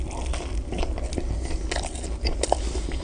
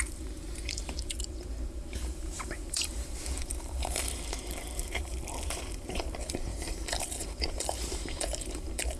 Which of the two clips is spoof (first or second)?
second